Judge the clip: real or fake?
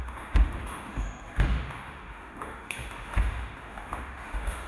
fake